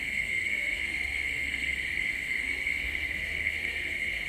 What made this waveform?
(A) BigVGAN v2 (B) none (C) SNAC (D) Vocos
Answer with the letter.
C